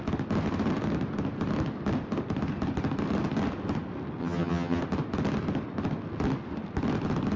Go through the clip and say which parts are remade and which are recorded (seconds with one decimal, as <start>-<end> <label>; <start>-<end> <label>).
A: 0.0-4.2 recorded; 4.2-4.8 remade; 4.8-7.4 recorded